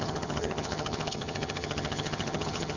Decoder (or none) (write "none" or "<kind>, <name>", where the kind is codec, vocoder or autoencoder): vocoder, HiFi-GAN